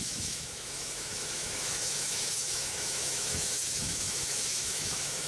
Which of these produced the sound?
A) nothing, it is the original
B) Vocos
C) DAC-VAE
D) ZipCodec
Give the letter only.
C